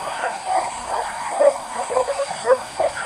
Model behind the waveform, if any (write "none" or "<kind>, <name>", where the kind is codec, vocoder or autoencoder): codec, SNAC